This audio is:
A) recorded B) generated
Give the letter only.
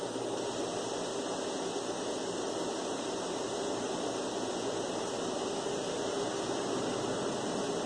A